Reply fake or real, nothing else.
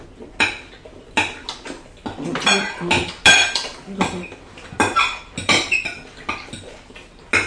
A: real